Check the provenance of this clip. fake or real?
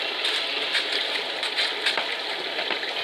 real